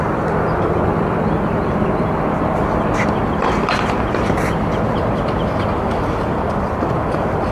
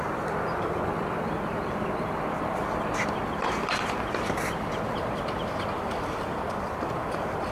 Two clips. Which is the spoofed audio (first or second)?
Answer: second